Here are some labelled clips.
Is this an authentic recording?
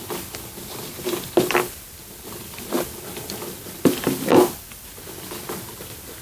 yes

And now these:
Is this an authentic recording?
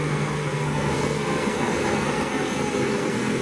no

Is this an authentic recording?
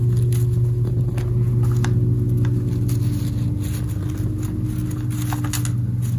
yes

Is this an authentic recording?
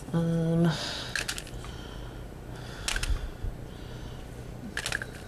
yes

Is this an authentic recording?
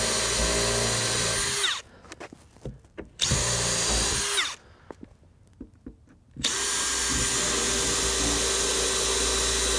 yes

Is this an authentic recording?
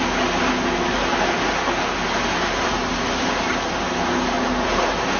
yes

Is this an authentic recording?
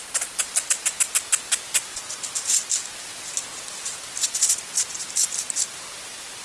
yes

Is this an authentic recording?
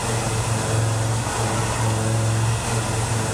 yes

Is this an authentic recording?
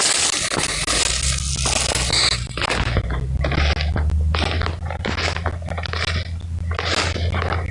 yes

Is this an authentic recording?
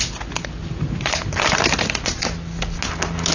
yes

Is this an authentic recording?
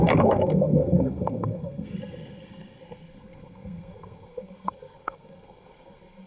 no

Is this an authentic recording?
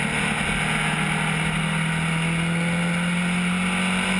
yes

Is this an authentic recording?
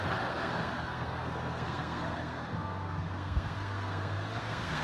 no